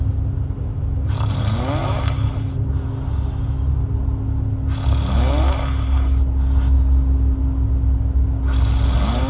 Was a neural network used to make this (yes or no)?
no